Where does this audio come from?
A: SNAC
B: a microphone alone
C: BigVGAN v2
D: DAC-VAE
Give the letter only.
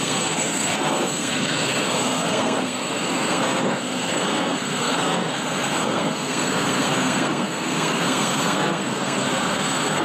A